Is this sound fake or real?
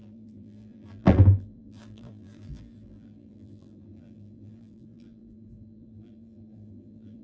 fake